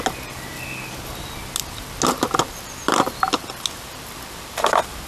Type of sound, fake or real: real